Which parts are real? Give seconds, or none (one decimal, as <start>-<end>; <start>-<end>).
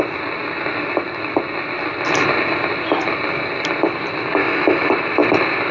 0.0-4.4; 4.9-5.7